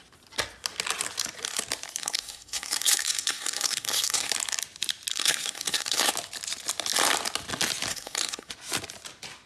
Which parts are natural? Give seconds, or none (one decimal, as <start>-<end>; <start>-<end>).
0.0-2.0; 4.3-5.1; 6.1-7.9; 8.5-9.5